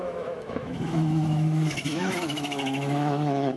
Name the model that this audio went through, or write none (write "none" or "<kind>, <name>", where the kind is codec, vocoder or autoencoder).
autoencoder, DAC-VAE